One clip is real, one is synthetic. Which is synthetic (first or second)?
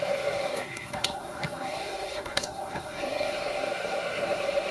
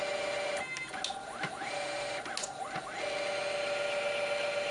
first